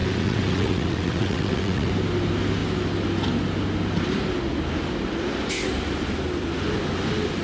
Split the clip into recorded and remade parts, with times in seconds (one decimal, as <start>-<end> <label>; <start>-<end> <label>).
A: 0.0-1.9 remade; 1.9-7.4 recorded